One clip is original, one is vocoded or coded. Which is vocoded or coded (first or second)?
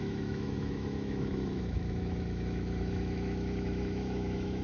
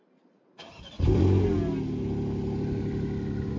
first